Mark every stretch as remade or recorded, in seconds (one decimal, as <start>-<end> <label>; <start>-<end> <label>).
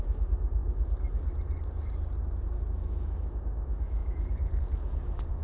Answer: 0.0-0.6 remade; 0.6-2.2 recorded; 2.2-5.4 remade